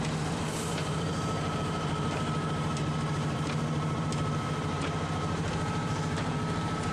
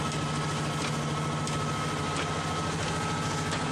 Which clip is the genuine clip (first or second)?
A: second